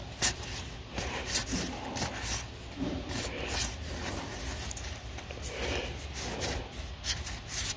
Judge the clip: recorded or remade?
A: recorded